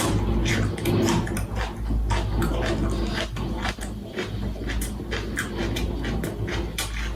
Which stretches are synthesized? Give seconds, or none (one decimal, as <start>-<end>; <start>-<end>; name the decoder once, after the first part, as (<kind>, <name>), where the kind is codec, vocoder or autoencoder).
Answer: none